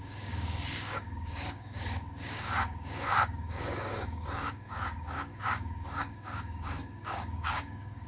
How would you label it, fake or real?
fake